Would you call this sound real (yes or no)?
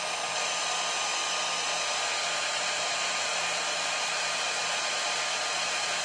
yes